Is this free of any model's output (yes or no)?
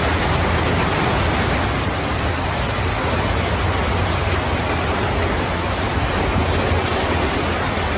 yes